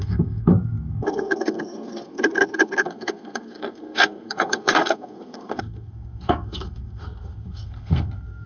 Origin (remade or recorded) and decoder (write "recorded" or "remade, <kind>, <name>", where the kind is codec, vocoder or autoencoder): remade, codec, SNAC